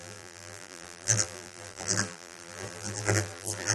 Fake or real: fake